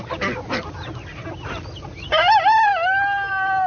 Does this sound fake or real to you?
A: real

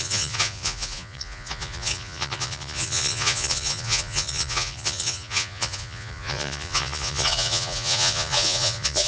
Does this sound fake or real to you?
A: fake